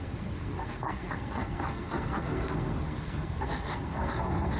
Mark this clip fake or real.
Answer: fake